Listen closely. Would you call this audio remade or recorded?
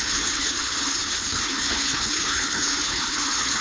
remade